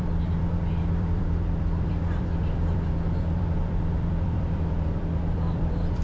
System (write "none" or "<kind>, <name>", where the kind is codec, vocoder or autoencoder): vocoder, BigVGAN v2